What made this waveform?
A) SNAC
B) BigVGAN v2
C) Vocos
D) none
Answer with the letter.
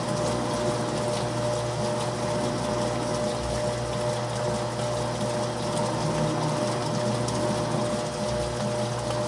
D